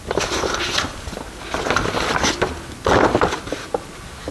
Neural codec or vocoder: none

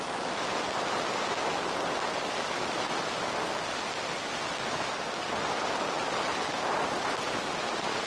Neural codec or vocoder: none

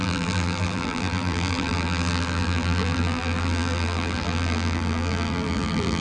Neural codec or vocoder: vocoder, BigVGAN v2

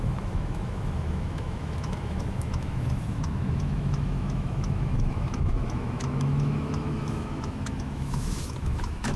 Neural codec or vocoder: autoencoder, DAC-VAE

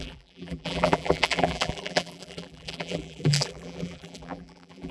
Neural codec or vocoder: vocoder, BigVGAN v2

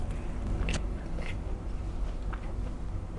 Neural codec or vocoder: none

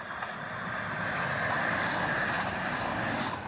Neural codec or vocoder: none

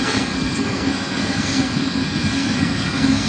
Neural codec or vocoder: codec, SNAC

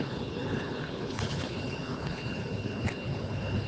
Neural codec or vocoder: codec, HILCodec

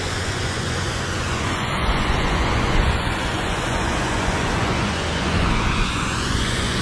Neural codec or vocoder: vocoder, Vocos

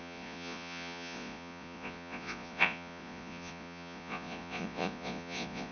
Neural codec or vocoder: vocoder, Vocos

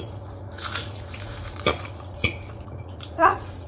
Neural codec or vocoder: vocoder, Vocos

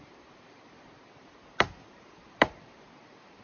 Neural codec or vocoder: vocoder, BigVGAN v2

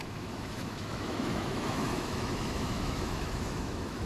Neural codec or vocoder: autoencoder, DAC-VAE